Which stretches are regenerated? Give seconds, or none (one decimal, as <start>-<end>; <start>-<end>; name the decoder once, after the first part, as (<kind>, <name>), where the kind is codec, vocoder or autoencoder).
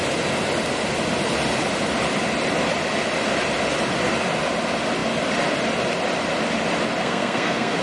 7.0-7.8 (codec, SNAC)